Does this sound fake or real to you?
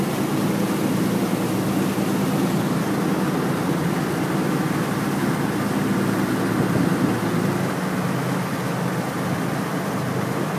real